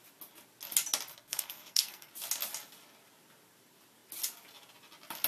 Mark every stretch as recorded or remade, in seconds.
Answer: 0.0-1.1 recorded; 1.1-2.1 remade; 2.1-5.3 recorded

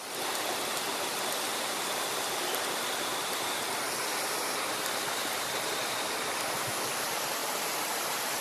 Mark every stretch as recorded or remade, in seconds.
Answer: 0.0-7.4 recorded; 7.4-8.0 remade; 8.0-8.4 recorded